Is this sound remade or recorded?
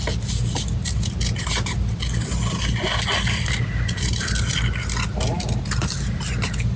recorded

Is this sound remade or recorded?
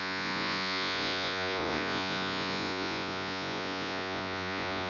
remade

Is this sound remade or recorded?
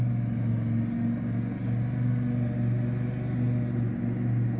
recorded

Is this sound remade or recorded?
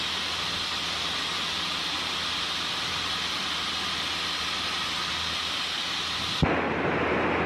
recorded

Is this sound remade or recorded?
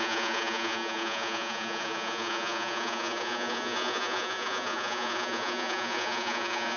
remade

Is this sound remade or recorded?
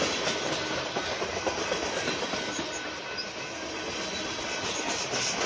recorded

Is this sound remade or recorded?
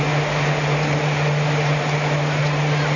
recorded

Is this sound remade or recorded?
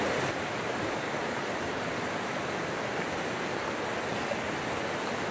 recorded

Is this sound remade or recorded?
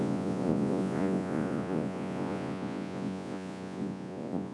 remade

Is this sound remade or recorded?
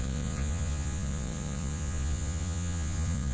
remade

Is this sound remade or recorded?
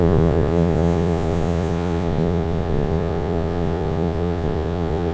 remade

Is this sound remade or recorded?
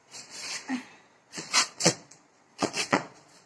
remade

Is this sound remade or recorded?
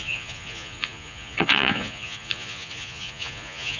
remade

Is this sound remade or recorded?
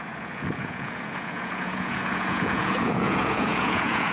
remade